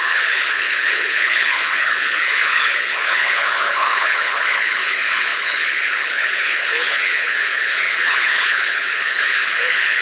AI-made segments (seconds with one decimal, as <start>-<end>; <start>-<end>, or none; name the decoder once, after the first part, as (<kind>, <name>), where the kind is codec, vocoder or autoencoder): 0.0-10.0 (codec, HILCodec)